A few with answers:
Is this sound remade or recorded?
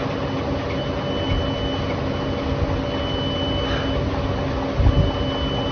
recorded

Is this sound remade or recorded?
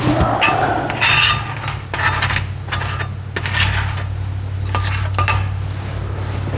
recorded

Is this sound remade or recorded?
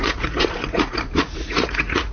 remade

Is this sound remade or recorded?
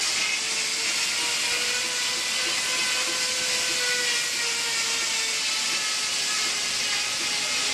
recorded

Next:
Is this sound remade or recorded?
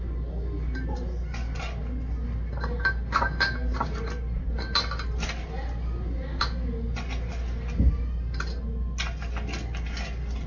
recorded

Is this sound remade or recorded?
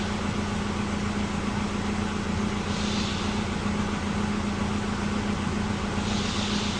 recorded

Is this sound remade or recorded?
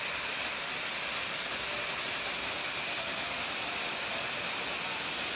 recorded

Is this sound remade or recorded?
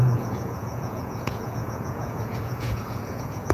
remade